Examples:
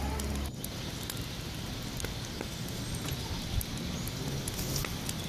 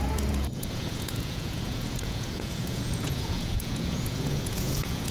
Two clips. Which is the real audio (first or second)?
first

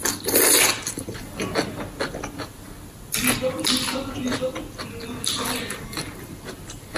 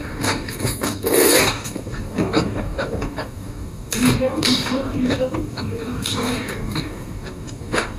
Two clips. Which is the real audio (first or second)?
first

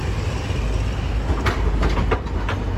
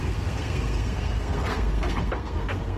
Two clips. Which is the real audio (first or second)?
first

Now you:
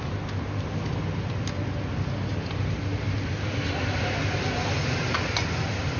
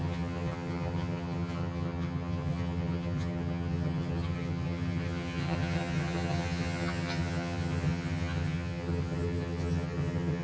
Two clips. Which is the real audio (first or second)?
first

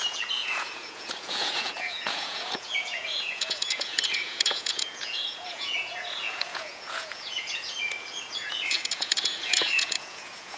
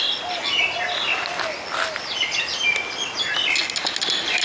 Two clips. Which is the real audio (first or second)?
second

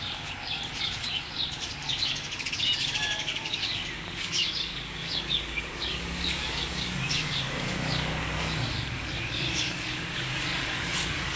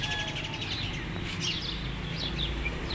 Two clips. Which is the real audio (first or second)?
second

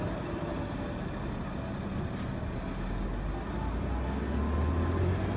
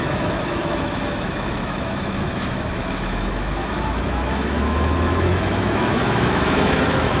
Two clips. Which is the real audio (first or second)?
first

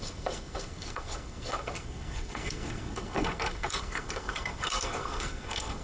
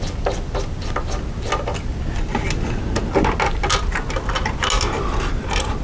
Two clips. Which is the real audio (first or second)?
second